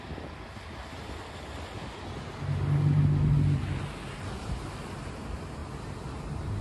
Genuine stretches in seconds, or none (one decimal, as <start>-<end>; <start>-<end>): 0.0-6.6